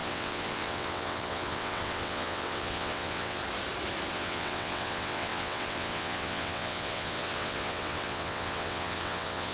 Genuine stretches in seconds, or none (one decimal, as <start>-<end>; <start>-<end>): 3.4-4.1